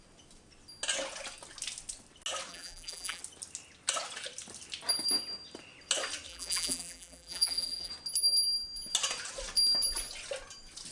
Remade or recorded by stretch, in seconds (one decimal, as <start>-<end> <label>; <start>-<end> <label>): 0.0-2.5 recorded; 2.5-3.2 remade; 3.2-6.3 recorded; 6.3-7.9 remade; 7.9-10.9 recorded

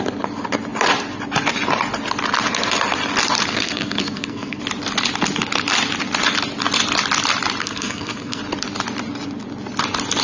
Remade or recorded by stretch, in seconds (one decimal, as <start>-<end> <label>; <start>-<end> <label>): 0.0-3.5 recorded; 3.5-4.6 remade; 4.6-7.6 recorded; 7.6-8.4 remade; 8.4-10.2 recorded

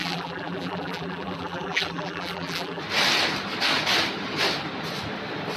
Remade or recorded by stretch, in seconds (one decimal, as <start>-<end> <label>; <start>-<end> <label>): 0.0-2.8 remade; 2.8-5.6 recorded

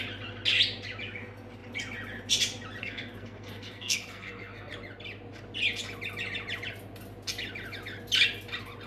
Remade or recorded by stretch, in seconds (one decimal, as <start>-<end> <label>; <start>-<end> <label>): 0.0-2.8 recorded; 2.8-4.7 remade; 4.7-8.9 recorded

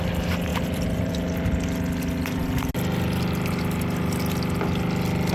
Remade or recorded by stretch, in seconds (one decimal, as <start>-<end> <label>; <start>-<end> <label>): 0.0-0.5 recorded; 0.5-1.1 remade; 1.1-5.3 recorded

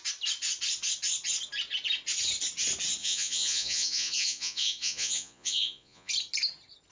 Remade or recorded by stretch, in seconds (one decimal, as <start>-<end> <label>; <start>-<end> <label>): 0.0-3.0 recorded; 3.0-6.1 remade; 6.1-6.9 recorded

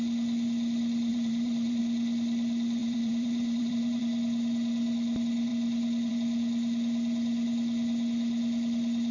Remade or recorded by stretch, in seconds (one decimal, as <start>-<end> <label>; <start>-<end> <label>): 0.0-1.1 recorded; 1.1-1.8 remade; 1.8-2.8 recorded; 2.8-4.0 remade; 4.0-9.1 recorded